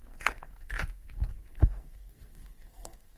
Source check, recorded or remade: remade